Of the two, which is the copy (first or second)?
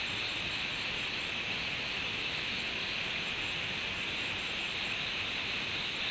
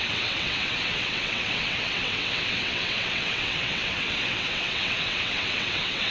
second